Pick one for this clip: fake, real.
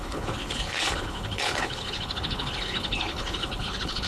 fake